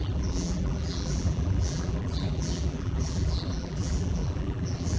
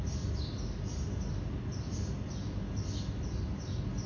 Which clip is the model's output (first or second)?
first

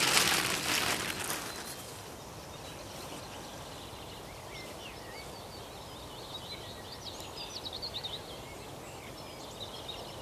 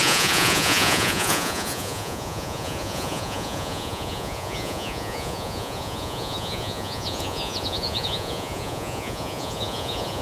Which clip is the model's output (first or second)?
second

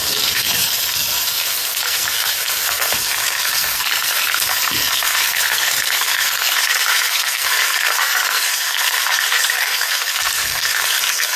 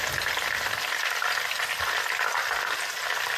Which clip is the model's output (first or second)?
first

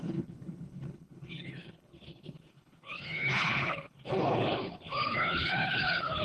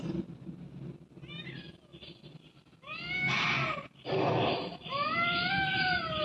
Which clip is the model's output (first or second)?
first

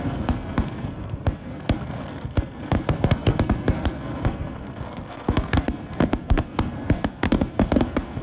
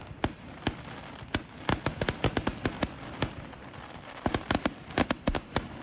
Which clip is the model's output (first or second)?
first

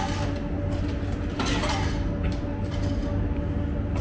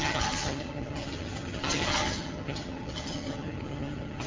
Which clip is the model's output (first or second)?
second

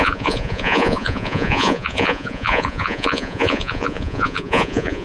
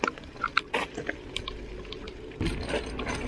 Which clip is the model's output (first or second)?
first